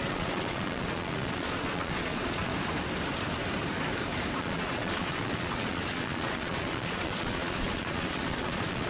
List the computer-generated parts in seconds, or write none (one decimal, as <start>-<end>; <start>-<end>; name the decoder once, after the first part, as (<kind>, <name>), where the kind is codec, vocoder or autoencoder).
0.0-2.5 (vocoder, Vocos); 4.4-8.9